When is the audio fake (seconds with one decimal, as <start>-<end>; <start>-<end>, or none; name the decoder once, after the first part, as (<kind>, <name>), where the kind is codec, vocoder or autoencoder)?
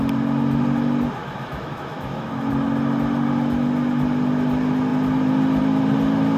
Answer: 1.2-2.5 (autoencoder, DAC-VAE)